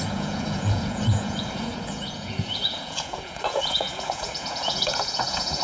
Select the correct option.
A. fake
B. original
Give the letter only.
A